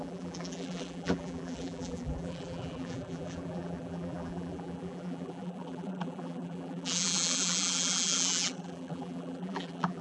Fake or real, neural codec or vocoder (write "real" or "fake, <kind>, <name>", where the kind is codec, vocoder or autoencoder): fake, vocoder, BigVGAN v2